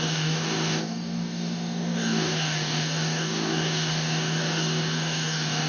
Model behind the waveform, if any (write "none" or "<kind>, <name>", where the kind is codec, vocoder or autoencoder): codec, DAC